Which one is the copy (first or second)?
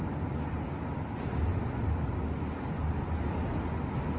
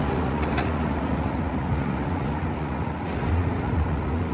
second